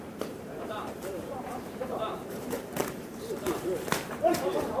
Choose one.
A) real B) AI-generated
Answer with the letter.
B